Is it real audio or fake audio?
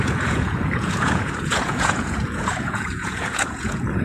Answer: fake